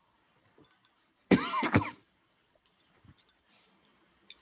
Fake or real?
fake